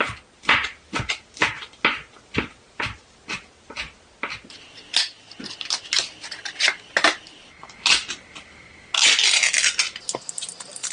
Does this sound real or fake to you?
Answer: real